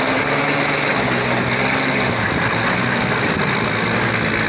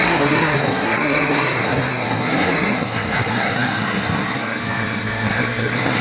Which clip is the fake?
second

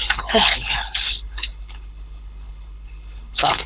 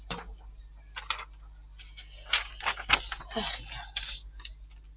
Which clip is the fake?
first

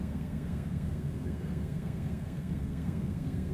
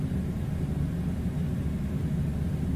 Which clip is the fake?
first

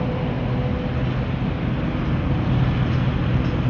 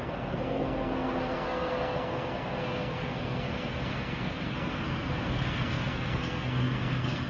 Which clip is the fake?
second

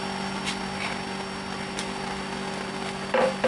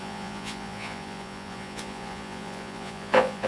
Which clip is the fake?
second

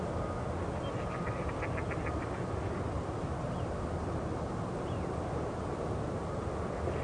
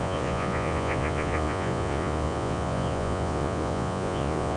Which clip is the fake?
second